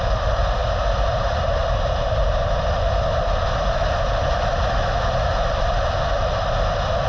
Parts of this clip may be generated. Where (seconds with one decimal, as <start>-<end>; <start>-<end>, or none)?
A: none